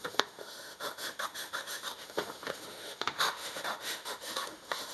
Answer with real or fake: fake